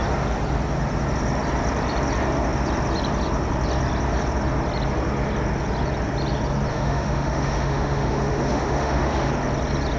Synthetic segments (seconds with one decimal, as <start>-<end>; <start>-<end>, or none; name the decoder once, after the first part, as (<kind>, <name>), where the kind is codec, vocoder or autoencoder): 6.7-9.3 (autoencoder, DAC-VAE)